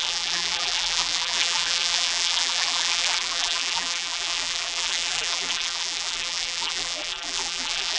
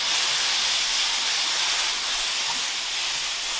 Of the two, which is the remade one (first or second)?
first